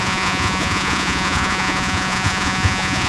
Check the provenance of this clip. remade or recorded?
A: remade